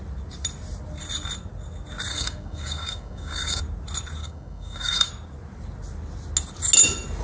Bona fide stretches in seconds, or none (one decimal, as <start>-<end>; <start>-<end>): 0.0-2.1; 3.6-4.2; 5.1-7.2